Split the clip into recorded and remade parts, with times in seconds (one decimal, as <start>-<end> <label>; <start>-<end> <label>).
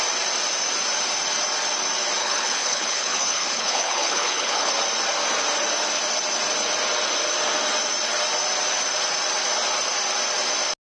0.0-2.2 recorded; 2.2-4.7 remade; 4.7-10.8 recorded